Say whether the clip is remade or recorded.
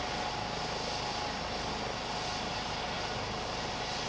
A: recorded